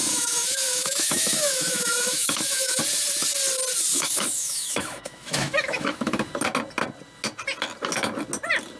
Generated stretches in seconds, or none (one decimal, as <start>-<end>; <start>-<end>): 0.0-2.8; 3.9-6.3